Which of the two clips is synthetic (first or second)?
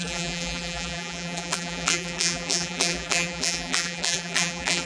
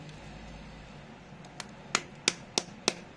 first